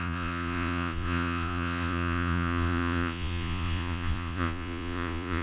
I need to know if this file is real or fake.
fake